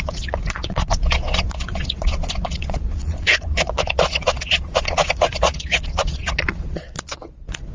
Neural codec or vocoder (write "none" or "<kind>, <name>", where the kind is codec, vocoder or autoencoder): vocoder, Vocos